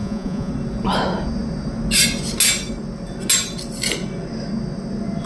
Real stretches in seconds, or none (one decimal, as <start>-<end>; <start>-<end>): 0.5-5.3

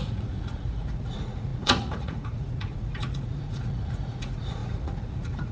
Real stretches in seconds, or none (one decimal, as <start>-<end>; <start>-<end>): none

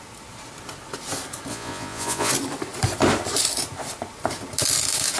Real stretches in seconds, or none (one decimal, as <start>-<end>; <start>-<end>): 0.0-1.5; 2.3-5.2

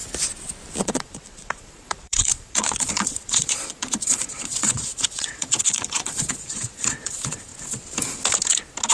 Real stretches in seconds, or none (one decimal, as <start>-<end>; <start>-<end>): 0.0-0.8; 7.5-8.9